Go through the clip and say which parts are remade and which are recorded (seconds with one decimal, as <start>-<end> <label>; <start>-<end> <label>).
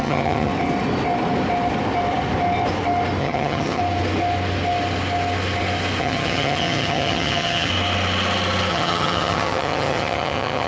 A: 0.0-0.5 remade; 0.5-3.2 recorded; 3.2-3.8 remade; 3.8-6.0 recorded; 6.0-7.7 remade; 7.7-8.7 recorded; 8.7-10.7 remade